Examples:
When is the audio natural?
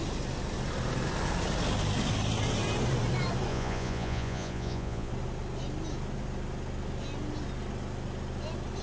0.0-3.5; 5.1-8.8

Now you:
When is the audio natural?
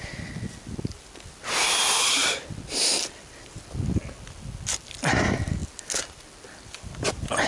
0.0-7.5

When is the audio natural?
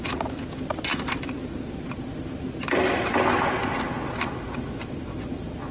0.0-0.9; 1.7-5.7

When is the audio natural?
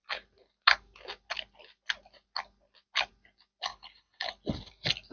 0.0-3.7; 4.3-5.1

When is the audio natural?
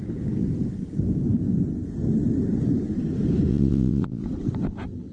0.0-3.5; 4.2-5.1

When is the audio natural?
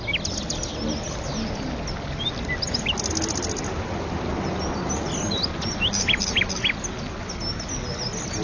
0.0-8.4